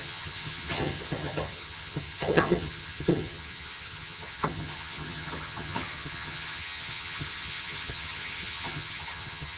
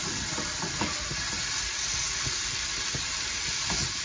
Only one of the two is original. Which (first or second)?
second